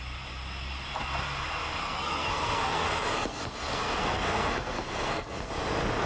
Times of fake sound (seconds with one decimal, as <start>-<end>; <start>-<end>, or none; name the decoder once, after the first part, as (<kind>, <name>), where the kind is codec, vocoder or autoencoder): 1.8-5.5 (codec, SNAC)